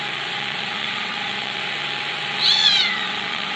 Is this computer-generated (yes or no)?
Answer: yes